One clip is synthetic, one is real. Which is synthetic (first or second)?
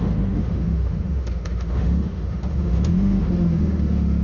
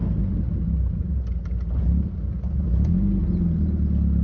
first